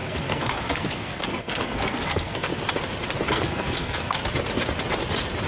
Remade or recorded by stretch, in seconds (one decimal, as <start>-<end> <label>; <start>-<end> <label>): 0.0-2.5 remade; 2.5-3.3 recorded; 3.3-4.2 remade; 4.2-5.5 recorded

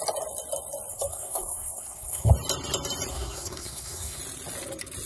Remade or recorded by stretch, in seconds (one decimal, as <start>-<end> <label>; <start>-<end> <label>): 0.0-0.9 recorded; 0.9-2.3 remade; 2.3-3.1 recorded; 3.1-4.2 remade; 4.2-5.1 recorded

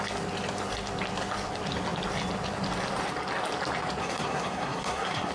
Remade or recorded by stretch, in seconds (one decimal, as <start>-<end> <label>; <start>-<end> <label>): 0.0-4.0 recorded; 4.0-5.3 remade

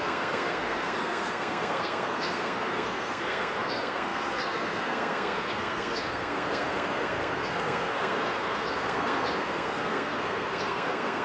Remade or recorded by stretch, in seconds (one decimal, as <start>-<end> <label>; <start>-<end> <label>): 0.0-11.2 remade

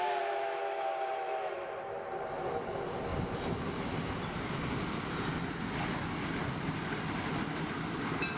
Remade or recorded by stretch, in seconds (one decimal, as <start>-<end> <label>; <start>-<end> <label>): 0.0-8.4 recorded

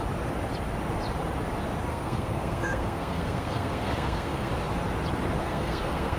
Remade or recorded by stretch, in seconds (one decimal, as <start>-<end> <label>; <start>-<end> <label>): 0.0-1.9 recorded; 1.9-4.5 remade; 4.5-5.4 recorded; 5.4-6.2 remade

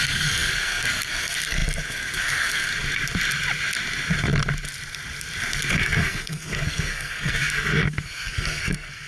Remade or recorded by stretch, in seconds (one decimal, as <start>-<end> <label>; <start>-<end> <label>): 0.0-2.7 remade; 2.7-5.7 recorded; 5.7-9.1 remade

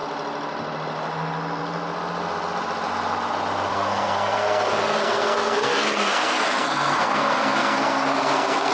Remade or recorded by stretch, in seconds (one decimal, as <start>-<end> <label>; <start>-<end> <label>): 0.0-3.7 recorded; 3.7-8.7 remade